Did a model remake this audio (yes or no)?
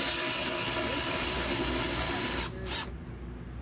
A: no